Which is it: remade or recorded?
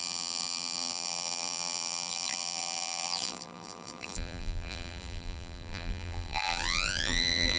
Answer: remade